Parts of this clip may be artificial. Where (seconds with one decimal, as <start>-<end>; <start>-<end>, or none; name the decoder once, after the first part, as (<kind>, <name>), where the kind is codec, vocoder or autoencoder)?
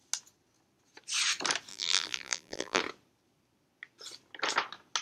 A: 1.7-2.8 (vocoder, BigVGAN v2)